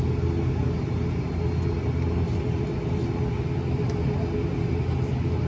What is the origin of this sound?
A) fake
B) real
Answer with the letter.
B